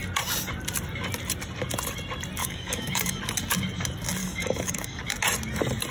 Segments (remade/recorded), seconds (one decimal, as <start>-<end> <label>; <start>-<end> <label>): 0.0-2.4 recorded; 2.4-3.2 remade; 3.2-4.2 recorded; 4.2-5.0 remade; 5.0-5.9 recorded